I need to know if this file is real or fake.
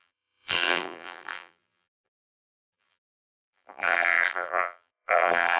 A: fake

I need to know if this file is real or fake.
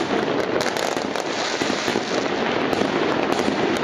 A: real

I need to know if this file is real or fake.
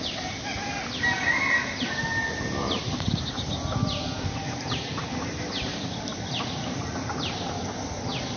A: real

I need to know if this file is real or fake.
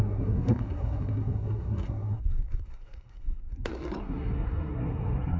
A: fake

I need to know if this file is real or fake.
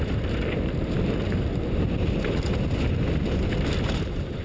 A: real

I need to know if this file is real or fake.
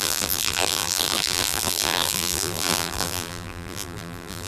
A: fake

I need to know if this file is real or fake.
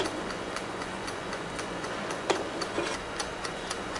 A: fake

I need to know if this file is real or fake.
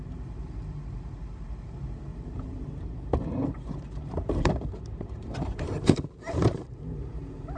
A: fake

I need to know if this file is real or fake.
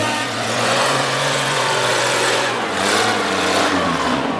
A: fake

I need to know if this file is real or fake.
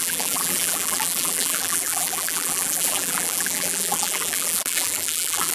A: fake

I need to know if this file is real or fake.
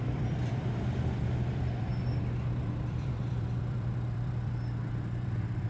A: fake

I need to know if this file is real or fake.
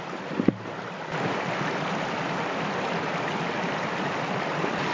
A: real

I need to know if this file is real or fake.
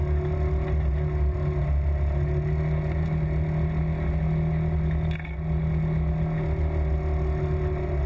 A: real